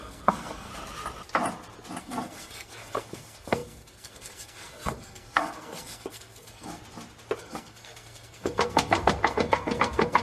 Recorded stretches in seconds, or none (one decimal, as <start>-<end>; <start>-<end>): 0.7-2.0; 6.8-7.4